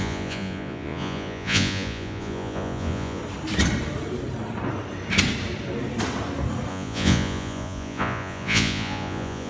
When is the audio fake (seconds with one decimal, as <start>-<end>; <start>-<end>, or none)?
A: 0.0-3.2; 6.7-9.5